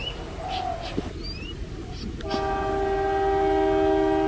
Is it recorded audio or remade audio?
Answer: recorded